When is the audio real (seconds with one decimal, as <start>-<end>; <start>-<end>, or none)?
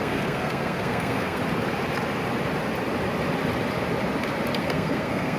1.4-4.6